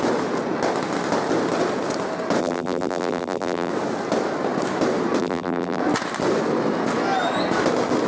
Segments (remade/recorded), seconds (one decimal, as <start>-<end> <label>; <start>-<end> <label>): 0.0-2.4 recorded; 2.4-3.7 remade; 3.7-5.2 recorded; 5.2-5.8 remade; 5.8-8.1 recorded